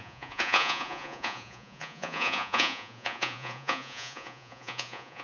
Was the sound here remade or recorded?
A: remade